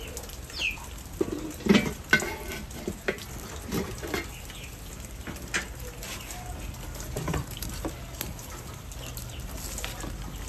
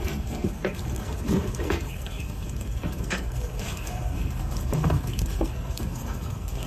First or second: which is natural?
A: first